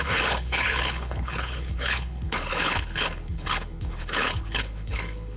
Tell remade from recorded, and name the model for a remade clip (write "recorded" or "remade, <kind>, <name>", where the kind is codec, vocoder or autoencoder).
remade, codec, HILCodec